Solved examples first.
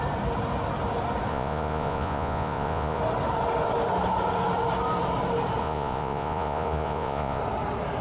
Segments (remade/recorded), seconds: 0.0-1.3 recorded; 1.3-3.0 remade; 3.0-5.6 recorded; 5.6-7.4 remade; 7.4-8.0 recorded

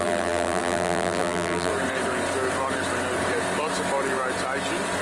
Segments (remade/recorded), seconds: 0.0-1.7 remade; 1.7-5.0 recorded

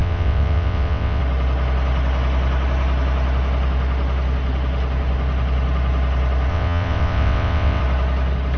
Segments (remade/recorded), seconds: 0.0-1.2 remade; 1.2-6.5 recorded; 6.5-7.8 remade; 7.8-8.6 recorded

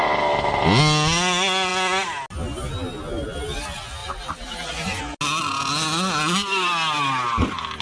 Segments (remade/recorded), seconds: 0.0-4.0 recorded; 4.0-5.0 remade; 5.0-7.8 recorded